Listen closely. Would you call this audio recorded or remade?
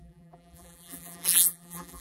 remade